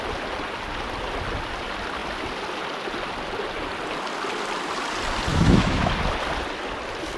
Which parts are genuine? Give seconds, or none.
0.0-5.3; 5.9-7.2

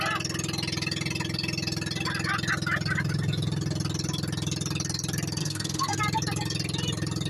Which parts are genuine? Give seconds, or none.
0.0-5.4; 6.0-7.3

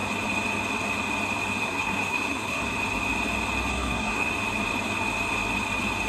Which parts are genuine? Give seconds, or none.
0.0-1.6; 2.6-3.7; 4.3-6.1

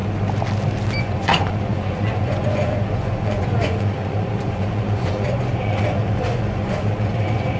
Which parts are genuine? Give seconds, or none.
0.0-1.0

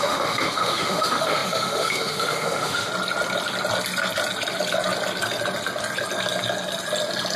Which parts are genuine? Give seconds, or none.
2.9-7.4

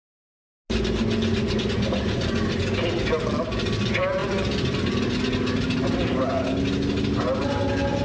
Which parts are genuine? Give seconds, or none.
0.0-8.0

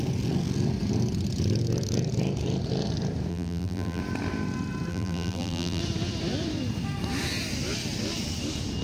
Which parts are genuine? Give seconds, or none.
0.0-3.3; 4.0-4.9; 5.8-8.8

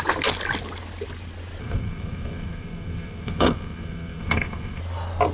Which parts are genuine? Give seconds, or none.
0.0-1.6; 4.8-5.3